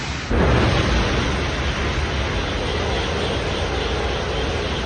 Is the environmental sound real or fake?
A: real